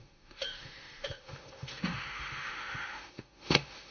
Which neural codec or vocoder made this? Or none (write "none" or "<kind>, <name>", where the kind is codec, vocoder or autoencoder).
autoencoder, DAC-VAE